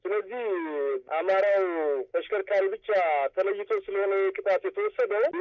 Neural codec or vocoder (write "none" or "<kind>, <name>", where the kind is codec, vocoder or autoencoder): none